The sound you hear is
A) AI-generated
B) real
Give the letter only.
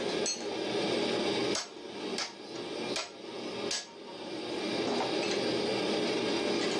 B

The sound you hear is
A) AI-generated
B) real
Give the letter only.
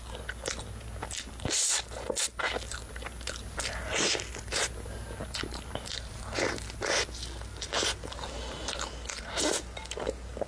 B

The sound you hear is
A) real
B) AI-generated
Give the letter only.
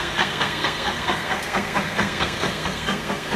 B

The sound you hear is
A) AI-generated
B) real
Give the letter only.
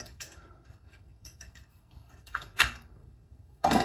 A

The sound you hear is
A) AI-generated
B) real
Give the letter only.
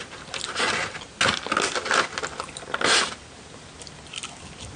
B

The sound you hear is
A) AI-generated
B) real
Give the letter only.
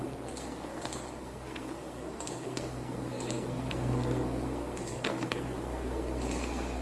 A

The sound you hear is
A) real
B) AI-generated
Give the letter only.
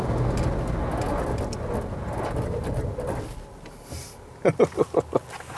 A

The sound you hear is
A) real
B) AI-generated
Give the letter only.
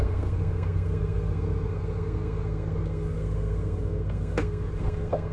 B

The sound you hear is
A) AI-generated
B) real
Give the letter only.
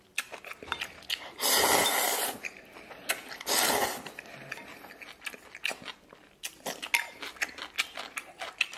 B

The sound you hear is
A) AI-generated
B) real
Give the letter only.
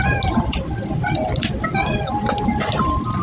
B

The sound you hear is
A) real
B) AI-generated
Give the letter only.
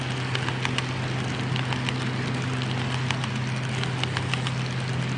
A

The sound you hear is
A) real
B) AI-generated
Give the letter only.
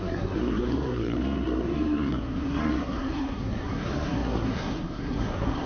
B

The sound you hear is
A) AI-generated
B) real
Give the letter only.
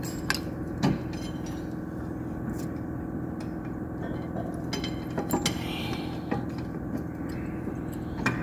B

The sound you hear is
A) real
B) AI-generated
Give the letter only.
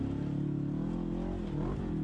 A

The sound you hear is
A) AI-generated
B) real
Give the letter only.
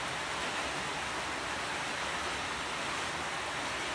B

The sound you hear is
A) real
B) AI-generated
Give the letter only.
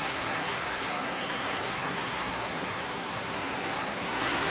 B